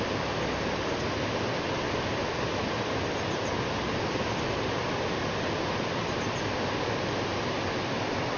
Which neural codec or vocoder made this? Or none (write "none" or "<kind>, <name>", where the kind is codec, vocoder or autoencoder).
none